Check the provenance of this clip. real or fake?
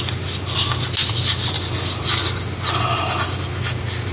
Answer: real